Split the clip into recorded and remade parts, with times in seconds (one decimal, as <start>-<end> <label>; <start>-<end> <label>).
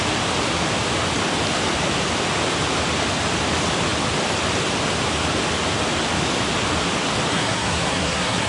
0.0-7.3 recorded; 7.3-8.5 remade